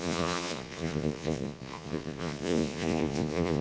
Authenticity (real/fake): fake